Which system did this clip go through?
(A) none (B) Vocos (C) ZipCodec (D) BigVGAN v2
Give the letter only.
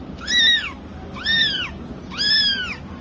A